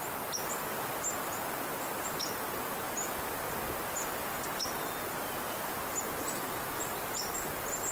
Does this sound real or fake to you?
real